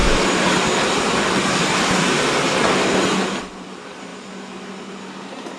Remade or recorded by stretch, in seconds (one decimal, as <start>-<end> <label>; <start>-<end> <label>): 0.0-5.6 recorded